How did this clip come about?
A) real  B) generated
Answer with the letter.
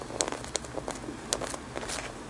A